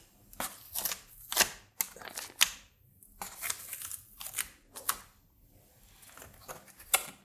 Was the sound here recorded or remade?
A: recorded